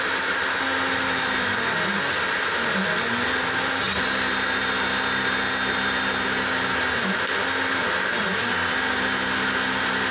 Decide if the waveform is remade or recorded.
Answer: recorded